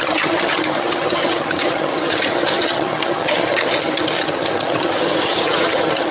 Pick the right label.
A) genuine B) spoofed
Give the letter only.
B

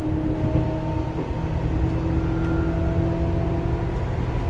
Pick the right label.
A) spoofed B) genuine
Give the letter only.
B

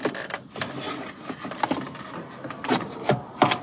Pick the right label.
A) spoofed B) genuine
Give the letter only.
B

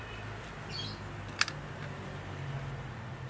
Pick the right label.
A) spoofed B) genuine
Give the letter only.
B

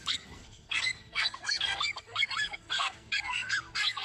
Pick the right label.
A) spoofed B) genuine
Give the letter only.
A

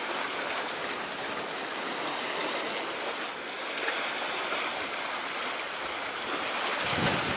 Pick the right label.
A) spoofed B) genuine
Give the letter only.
B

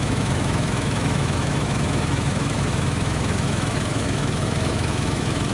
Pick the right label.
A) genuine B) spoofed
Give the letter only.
B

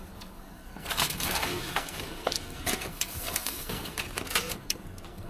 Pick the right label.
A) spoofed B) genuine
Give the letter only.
A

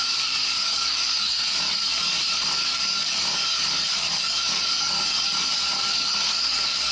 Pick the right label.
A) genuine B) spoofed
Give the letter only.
B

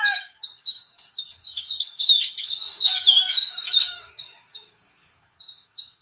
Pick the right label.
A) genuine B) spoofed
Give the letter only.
B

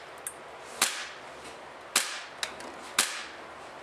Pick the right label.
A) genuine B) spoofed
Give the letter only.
A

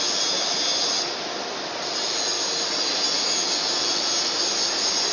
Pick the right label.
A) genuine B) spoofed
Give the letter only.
A